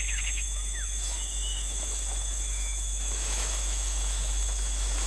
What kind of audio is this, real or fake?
fake